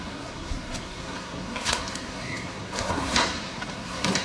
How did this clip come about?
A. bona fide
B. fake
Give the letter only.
B